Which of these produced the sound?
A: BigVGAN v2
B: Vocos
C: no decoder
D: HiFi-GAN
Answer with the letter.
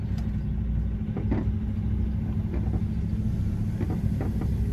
C